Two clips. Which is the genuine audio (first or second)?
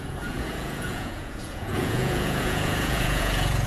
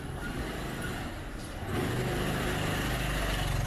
second